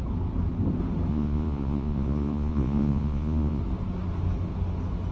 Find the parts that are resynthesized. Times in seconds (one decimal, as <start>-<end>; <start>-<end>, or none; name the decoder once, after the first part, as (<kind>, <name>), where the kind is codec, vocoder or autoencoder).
1.1-3.6 (vocoder, Vocos)

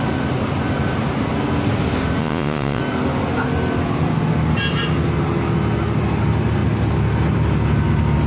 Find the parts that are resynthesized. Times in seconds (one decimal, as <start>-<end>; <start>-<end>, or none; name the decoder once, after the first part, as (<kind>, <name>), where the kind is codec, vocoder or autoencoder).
2.2-2.8 (vocoder, Vocos)

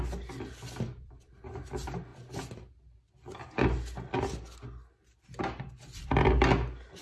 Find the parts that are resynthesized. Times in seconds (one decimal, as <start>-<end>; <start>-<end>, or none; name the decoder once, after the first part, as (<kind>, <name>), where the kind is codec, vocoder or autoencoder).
none